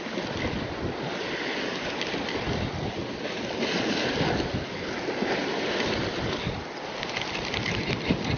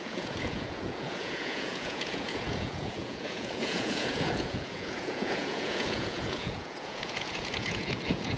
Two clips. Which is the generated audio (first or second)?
second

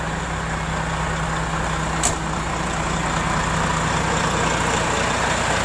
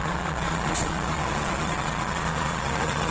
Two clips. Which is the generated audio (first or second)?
second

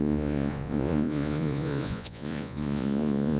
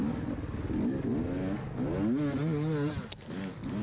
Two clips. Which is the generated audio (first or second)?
first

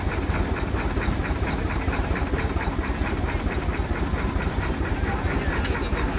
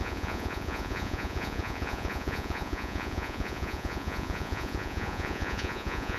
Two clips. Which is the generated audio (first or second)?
second